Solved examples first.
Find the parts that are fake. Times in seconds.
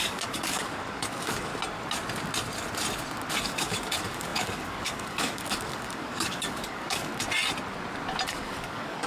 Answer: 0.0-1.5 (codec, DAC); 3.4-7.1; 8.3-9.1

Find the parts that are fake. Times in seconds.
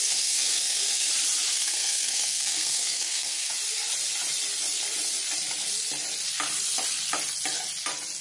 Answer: 0.0-1.1 (codec, SNAC); 1.5-3.5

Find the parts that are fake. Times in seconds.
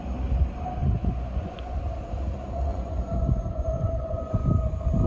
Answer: 0.8-1.8 (vocoder, Vocos); 2.7-4.5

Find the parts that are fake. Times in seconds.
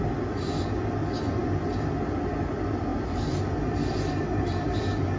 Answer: 2.9-4.8 (vocoder, BigVGAN v2)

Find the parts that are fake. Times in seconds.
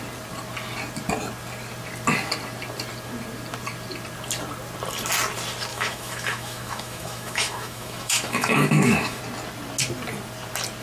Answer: 5.7-9.2 (autoencoder, DAC-VAE)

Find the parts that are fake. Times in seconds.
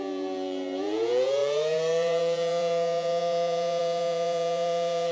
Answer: 0.0-5.1 (vocoder, Vocos)